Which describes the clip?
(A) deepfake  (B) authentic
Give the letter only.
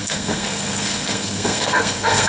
A